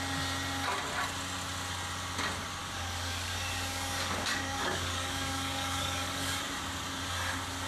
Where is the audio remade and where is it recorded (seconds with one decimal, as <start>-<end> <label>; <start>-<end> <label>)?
0.0-2.6 recorded; 2.6-6.4 remade; 6.4-7.7 recorded